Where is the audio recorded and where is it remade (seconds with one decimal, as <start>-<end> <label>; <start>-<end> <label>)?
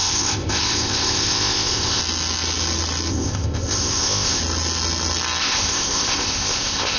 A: 0.0-2.0 remade; 2.0-3.1 recorded; 3.1-4.4 remade; 4.4-5.4 recorded; 5.4-7.0 remade